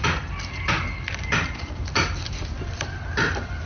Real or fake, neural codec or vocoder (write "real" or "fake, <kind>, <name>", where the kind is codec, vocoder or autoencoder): real